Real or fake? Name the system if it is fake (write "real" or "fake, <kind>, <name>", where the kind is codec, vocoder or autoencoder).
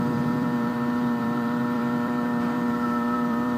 fake, vocoder, BigVGAN v2